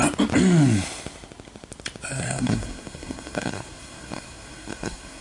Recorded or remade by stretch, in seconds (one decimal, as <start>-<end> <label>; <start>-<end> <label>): 0.0-2.2 recorded; 2.2-5.2 remade